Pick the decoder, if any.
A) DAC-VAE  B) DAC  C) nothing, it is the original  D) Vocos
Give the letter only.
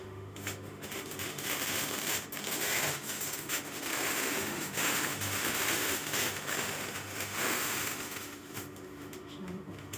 A